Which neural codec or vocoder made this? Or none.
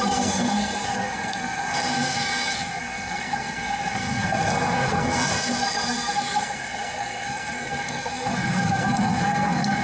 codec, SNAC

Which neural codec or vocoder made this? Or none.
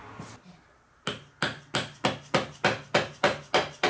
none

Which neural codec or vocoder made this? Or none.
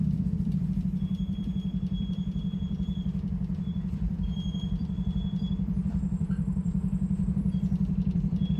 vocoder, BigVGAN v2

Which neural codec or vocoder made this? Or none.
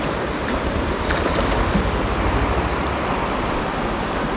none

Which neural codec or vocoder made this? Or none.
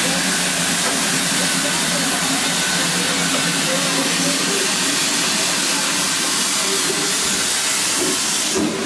none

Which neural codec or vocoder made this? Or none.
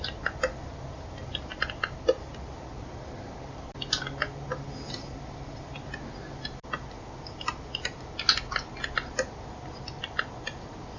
none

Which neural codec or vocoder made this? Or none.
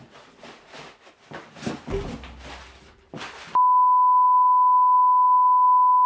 none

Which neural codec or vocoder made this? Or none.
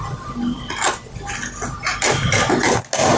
none